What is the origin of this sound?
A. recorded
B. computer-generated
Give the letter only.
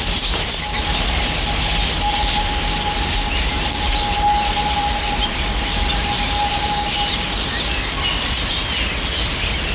A